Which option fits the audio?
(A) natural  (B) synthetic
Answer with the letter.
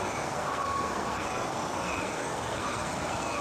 B